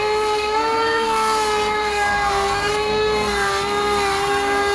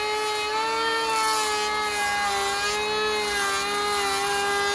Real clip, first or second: second